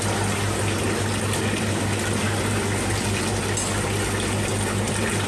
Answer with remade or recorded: recorded